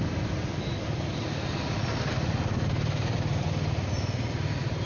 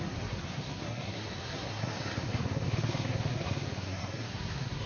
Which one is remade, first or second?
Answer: second